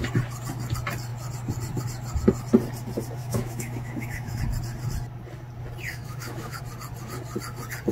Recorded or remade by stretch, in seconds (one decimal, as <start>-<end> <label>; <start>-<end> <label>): 0.0-3.2 recorded; 3.2-4.4 remade; 4.4-5.9 recorded; 5.9-6.6 remade; 6.6-7.9 recorded